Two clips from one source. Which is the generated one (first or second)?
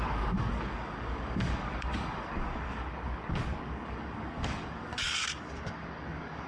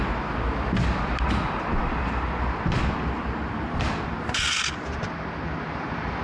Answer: first